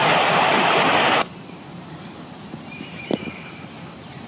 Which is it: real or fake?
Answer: fake